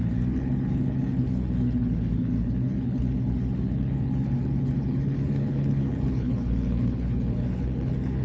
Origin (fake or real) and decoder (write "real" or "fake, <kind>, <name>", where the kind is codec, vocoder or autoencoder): fake, codec, HILCodec